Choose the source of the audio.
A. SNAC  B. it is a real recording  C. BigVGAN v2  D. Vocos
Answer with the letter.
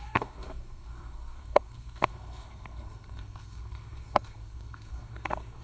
A